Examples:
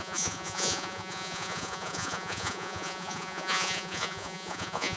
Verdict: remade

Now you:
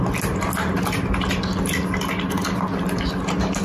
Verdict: recorded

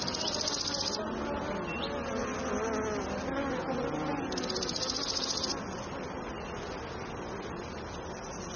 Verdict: recorded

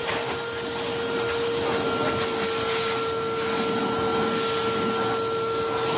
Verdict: recorded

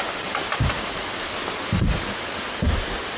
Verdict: recorded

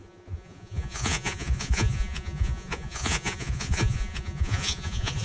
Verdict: remade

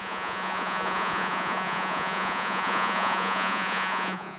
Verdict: remade